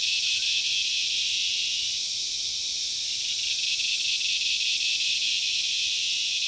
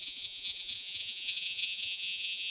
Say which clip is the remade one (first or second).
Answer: second